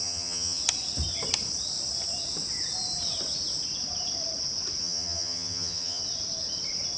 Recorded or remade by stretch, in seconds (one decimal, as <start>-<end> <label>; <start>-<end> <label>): 0.0-0.6 remade; 0.6-4.8 recorded; 4.8-6.0 remade; 6.0-7.0 recorded